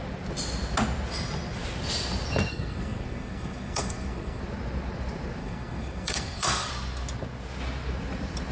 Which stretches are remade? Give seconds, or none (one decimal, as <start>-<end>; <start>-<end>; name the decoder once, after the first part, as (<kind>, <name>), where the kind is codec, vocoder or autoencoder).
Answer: 2.5-4.4 (codec, SNAC); 5.4-6.7

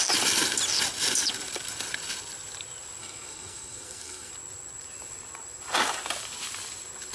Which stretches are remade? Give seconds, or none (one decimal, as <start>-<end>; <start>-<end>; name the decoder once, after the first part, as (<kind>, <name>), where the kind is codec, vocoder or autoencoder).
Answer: 3.0-4.3 (codec, SNAC)

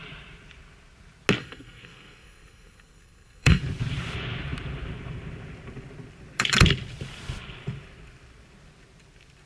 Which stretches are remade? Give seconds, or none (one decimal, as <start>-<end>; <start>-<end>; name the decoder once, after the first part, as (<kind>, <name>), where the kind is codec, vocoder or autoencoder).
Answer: 1.4-3.6 (codec, SNAC)

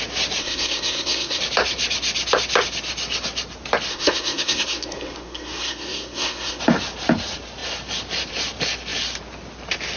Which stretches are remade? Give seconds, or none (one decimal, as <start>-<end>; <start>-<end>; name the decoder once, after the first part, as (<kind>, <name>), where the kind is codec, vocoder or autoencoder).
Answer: 0.4-1.4 (codec, SNAC); 3.9-6.6

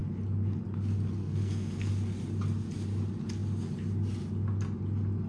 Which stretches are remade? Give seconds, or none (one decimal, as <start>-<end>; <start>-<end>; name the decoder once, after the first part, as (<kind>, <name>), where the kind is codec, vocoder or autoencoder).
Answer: 1.2-1.9 (codec, SNAC)

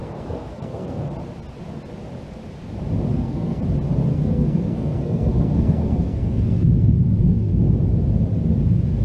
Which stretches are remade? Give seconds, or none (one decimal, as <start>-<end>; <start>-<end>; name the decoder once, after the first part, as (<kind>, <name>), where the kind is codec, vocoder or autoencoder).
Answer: 0.0-1.1 (codec, SNAC); 3.1-3.6; 4.1-7.6

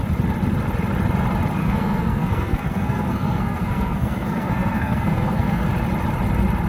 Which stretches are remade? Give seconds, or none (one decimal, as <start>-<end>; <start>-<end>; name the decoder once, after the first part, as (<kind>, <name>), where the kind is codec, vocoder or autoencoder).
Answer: 1.6-5.6 (codec, SNAC)